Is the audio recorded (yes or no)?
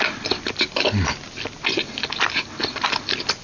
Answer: yes